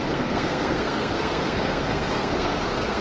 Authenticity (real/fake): fake